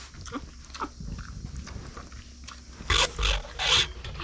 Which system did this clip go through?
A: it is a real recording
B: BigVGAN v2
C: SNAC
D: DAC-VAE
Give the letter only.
A